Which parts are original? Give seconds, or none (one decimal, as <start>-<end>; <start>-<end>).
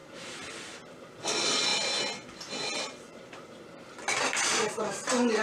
0.0-5.4